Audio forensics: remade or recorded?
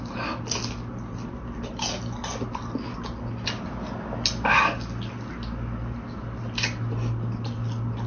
recorded